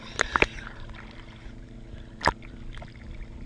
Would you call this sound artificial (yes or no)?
no